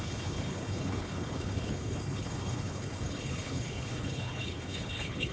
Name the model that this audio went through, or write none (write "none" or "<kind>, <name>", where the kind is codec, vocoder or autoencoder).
codec, HILCodec